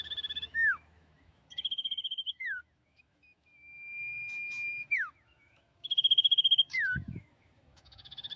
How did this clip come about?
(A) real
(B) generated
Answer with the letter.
B